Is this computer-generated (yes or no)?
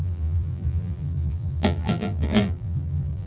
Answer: yes